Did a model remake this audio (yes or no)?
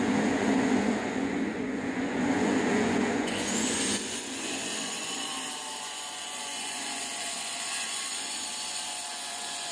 yes